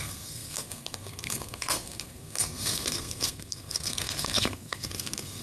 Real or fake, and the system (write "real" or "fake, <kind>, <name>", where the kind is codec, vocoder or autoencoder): fake, codec, SNAC